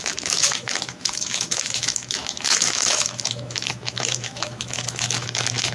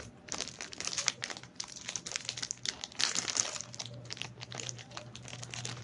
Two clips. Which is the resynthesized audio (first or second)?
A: first